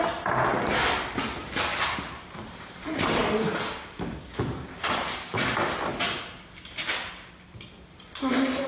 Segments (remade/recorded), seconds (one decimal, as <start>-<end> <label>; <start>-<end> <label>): 0.0-1.4 recorded; 1.4-5.4 remade; 5.4-5.9 recorded; 5.9-6.4 remade; 6.4-8.7 recorded